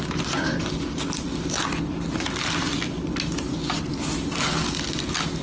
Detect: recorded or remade recorded